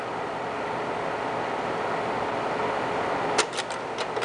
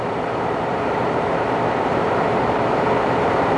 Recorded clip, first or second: first